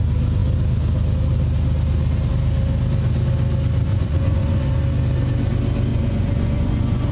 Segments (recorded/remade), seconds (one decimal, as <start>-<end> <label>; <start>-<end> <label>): 0.0-3.9 recorded; 3.9-4.7 remade; 4.7-5.9 recorded; 5.9-7.1 remade